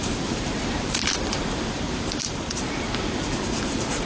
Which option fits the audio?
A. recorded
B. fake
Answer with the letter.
B